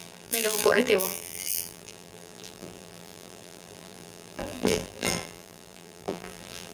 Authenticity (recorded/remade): remade